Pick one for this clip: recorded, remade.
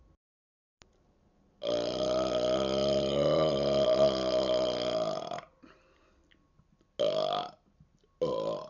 recorded